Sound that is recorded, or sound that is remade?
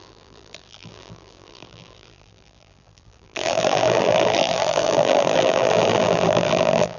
remade